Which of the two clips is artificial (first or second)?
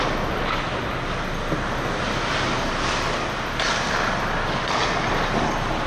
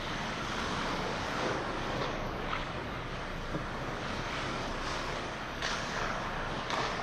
second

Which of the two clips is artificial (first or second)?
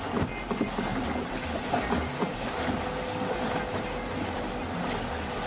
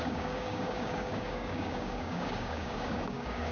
second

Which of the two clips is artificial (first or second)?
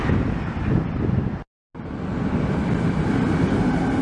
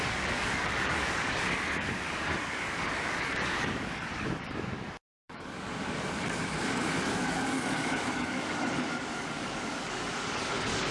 second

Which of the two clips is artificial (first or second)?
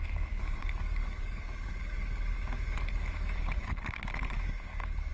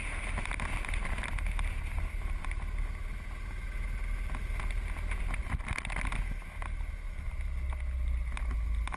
first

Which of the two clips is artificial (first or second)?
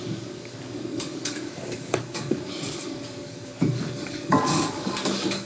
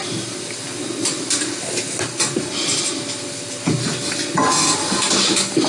first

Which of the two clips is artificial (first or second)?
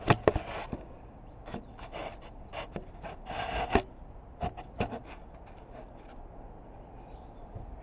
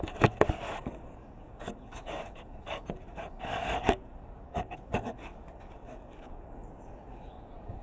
second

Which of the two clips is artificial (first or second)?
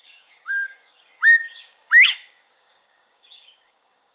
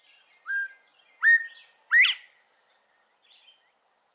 first